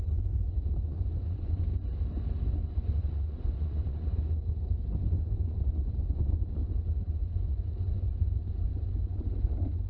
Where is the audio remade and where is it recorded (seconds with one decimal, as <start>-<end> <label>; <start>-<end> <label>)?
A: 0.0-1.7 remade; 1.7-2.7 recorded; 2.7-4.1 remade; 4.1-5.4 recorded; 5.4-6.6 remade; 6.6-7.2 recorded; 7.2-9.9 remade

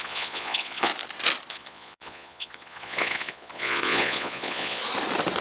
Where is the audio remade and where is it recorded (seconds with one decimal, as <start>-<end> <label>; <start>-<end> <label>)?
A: 0.0-0.9 remade; 0.9-1.5 recorded; 1.5-4.8 remade; 4.8-5.4 recorded

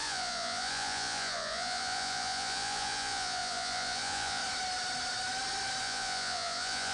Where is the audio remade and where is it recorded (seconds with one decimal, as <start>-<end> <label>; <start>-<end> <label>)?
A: 0.0-4.4 remade; 4.4-5.8 recorded; 5.8-6.9 remade